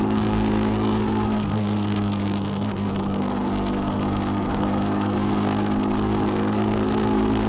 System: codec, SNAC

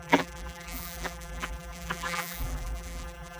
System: vocoder, BigVGAN v2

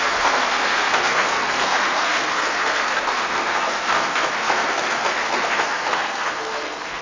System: codec, SNAC